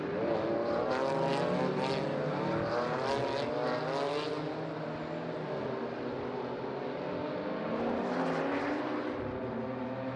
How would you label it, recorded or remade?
recorded